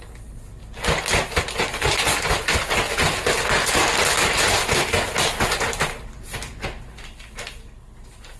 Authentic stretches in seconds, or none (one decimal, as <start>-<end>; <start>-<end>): 0.0-8.4